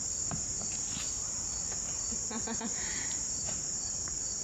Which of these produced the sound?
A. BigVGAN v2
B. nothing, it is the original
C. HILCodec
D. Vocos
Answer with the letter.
A